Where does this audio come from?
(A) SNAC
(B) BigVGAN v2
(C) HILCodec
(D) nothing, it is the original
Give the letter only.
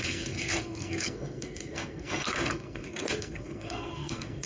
A